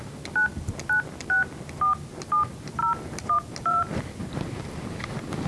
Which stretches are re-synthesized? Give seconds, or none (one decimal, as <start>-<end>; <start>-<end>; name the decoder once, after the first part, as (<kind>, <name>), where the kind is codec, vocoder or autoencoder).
2.8-5.0 (vocoder, BigVGAN v2)